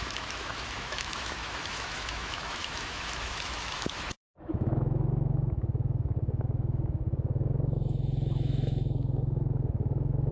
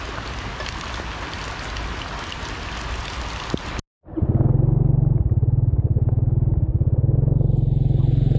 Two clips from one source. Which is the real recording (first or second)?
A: second